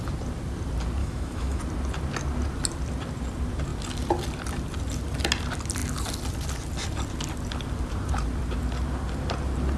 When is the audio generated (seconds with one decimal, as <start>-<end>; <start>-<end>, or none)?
1.0-1.6